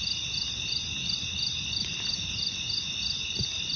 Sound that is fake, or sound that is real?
real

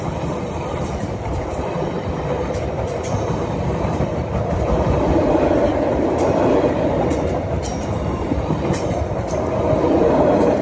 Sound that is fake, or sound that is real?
fake